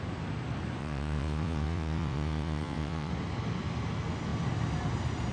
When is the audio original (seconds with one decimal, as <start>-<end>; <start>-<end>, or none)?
0.0-0.8; 3.1-5.3